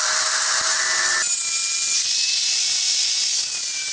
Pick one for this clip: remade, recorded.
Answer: recorded